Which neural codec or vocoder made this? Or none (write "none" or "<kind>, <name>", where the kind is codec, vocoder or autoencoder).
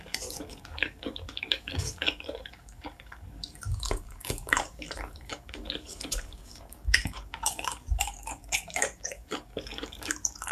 codec, DAC